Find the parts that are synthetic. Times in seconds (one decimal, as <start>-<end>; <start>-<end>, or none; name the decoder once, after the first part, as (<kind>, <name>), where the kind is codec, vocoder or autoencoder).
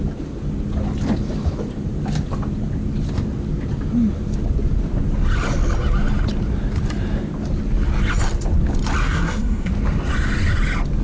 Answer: 9.0-9.7 (codec, SNAC)